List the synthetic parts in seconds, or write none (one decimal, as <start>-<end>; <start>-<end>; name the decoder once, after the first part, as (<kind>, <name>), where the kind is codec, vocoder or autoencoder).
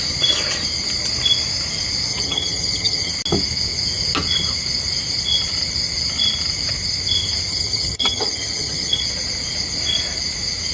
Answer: 2.1-3.1 (vocoder, HiFi-GAN); 7.5-9.0